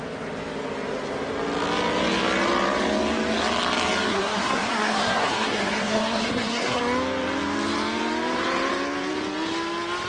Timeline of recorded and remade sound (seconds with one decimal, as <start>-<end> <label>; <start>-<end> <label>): 0.0-4.1 recorded; 4.1-6.8 remade; 6.8-10.1 recorded